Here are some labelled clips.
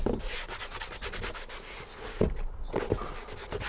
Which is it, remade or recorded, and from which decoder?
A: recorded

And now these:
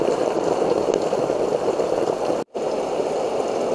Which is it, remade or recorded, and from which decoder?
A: recorded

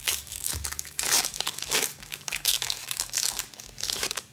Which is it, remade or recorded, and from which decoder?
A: remade, codec, DAC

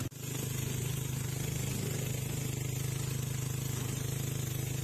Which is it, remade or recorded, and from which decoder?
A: recorded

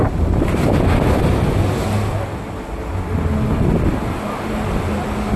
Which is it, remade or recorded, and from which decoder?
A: recorded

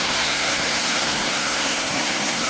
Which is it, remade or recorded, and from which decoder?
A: remade, codec, SNAC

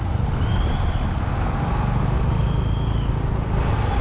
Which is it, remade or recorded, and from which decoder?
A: recorded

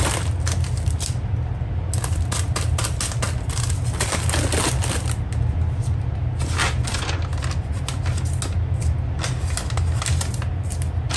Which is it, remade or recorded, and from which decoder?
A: recorded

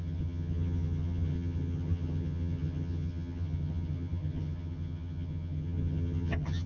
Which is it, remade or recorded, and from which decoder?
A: remade, vocoder, HiFi-GAN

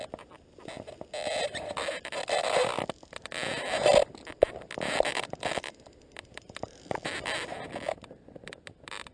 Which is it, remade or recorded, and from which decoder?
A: recorded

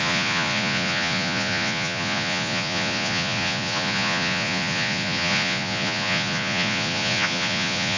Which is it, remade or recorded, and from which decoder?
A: remade, vocoder, Vocos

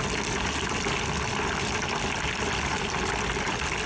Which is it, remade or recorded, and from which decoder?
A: recorded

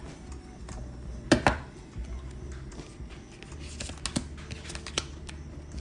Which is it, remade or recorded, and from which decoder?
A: recorded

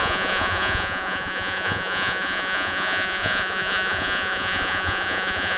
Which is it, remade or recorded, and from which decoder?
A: remade, vocoder, Vocos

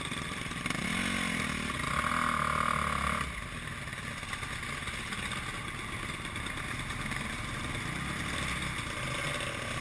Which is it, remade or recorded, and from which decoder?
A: recorded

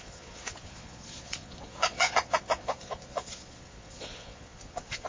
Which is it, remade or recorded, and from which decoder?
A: remade, vocoder, Vocos